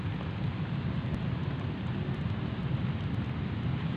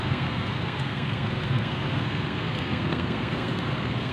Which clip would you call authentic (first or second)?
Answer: first